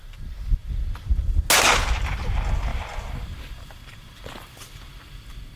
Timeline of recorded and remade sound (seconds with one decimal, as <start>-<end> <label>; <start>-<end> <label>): 0.0-0.6 recorded; 0.6-1.4 remade; 1.4-2.7 recorded; 2.7-5.0 remade; 5.0-5.6 recorded